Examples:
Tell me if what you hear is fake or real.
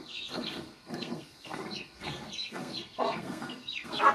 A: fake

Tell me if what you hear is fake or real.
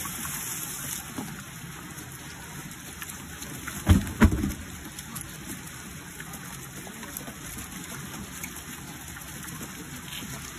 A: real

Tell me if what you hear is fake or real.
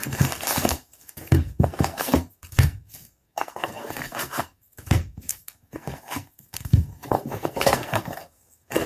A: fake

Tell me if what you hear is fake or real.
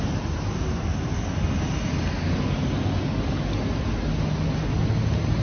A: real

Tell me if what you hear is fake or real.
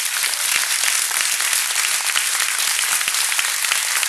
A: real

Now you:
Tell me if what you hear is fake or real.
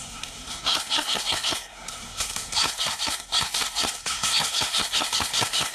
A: fake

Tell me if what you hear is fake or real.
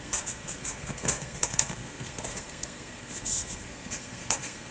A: fake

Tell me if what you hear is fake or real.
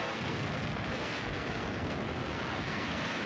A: fake